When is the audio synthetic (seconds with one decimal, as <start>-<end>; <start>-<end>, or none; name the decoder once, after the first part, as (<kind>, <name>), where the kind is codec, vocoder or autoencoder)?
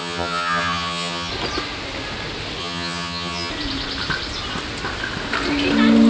0.0-1.3 (vocoder, HiFi-GAN); 2.6-3.5